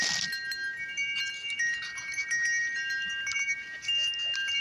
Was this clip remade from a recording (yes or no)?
no